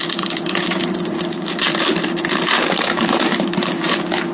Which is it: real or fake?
fake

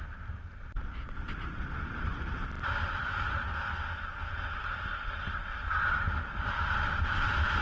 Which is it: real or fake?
real